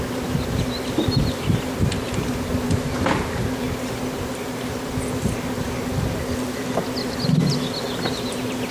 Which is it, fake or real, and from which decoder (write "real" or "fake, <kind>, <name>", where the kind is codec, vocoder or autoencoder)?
real